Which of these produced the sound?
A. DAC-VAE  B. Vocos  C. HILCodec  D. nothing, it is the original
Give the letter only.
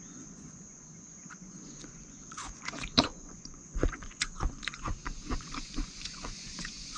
B